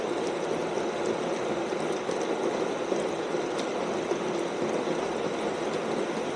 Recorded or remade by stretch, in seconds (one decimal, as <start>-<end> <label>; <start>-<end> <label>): 0.0-6.4 recorded